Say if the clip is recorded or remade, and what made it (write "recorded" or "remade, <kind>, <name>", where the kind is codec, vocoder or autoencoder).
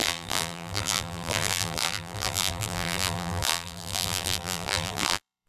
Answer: remade, vocoder, BigVGAN v2